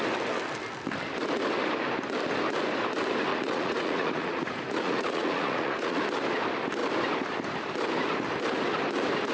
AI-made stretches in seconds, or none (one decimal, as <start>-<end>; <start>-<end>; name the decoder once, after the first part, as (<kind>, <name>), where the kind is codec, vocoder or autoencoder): 3.3-6.0 (vocoder, Vocos)